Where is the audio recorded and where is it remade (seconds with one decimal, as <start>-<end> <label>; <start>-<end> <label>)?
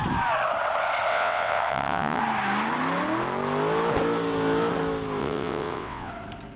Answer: 0.0-1.1 recorded; 1.1-2.2 remade; 2.2-5.2 recorded; 5.2-6.1 remade; 6.1-6.6 recorded